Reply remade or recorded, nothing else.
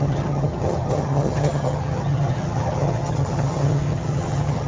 remade